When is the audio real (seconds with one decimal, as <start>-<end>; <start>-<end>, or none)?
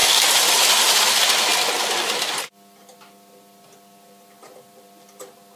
0.0-5.6